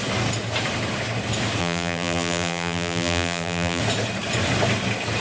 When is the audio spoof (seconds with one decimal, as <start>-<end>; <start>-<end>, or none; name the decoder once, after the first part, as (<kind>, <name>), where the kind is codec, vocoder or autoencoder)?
1.6-3.8 (vocoder, BigVGAN v2)